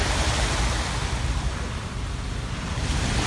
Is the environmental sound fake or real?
real